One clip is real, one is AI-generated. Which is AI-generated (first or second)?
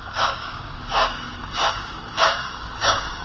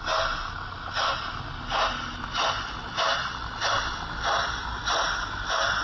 first